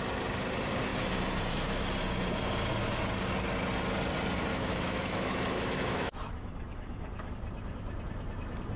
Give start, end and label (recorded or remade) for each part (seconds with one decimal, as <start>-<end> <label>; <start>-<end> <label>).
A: 0.0-4.5 recorded; 4.5-7.3 remade; 7.3-8.8 recorded